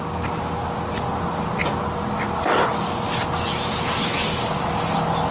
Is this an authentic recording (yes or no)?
yes